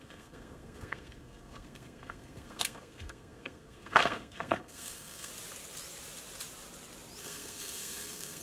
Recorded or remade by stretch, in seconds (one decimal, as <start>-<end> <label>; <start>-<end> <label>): 0.0-5.3 remade; 5.3-7.2 recorded; 7.2-8.4 remade